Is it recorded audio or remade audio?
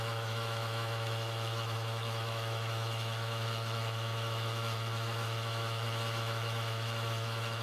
remade